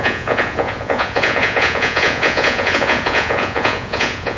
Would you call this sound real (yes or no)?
no